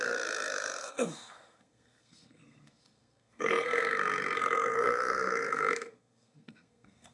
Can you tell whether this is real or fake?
fake